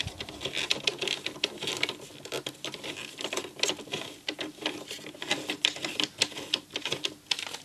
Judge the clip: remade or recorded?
recorded